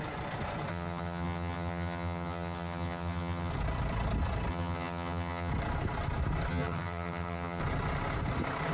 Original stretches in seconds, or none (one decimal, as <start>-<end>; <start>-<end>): 0.0-0.7; 3.5-4.5; 5.5-6.5; 7.6-8.7